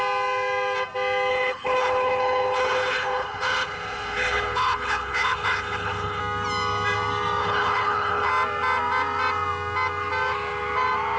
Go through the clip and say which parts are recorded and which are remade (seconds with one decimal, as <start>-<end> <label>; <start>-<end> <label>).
0.0-1.3 recorded; 1.3-6.2 remade; 6.2-7.4 recorded; 7.4-8.3 remade; 8.3-11.2 recorded